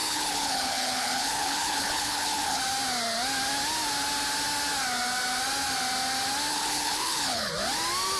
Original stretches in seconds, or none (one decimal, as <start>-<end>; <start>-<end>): 2.6-6.5; 7.5-8.2